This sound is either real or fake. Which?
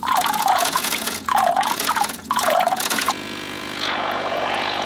fake